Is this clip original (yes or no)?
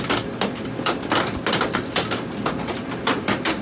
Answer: yes